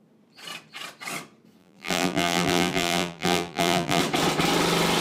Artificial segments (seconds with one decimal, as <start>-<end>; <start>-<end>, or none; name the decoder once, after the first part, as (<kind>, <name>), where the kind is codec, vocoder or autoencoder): 1.6-4.0 (vocoder, BigVGAN v2)